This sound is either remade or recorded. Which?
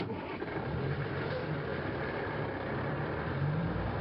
remade